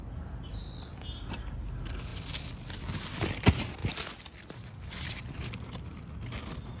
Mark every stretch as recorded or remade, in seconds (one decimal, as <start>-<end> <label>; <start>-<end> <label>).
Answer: 0.0-6.8 recorded